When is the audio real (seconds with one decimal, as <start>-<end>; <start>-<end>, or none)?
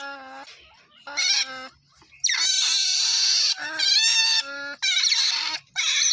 0.0-6.1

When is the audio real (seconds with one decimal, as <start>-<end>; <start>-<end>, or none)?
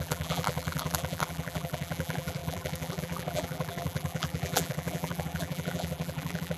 none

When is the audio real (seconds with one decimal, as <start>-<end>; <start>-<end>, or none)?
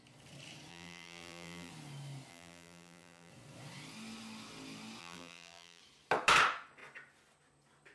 0.0-0.7; 1.7-2.3; 3.3-5.0; 5.8-7.9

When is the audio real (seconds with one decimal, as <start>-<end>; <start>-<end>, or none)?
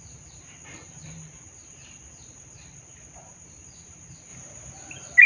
4.3-5.3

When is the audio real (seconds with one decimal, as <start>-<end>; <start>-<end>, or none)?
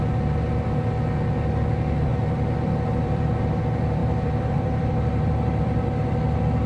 0.0-2.1; 3.6-4.0; 6.0-6.7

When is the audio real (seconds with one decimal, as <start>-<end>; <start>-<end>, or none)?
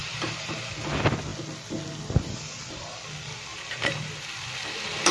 0.7-3.5; 4.1-5.1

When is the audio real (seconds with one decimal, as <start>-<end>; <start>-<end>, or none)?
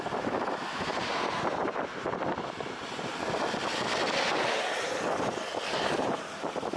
3.1-5.8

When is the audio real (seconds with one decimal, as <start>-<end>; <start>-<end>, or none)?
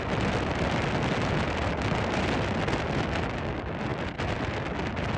0.0-5.2